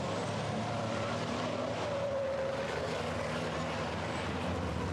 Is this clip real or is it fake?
real